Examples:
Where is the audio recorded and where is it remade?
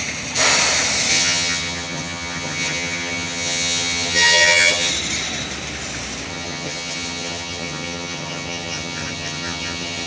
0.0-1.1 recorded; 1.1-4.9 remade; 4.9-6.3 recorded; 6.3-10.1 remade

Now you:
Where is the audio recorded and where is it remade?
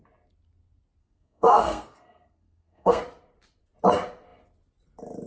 0.0-1.0 recorded; 1.0-3.0 remade; 3.0-5.3 recorded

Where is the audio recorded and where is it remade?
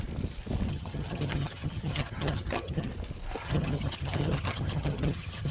0.0-0.7 recorded; 0.7-2.9 remade; 2.9-3.4 recorded; 3.4-5.5 remade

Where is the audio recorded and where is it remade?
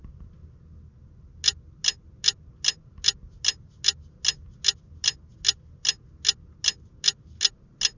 0.0-8.0 recorded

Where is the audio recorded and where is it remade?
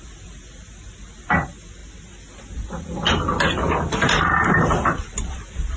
0.0-5.8 recorded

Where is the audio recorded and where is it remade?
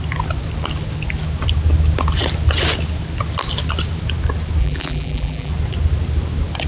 0.0-4.6 recorded; 4.6-5.5 remade; 5.5-6.7 recorded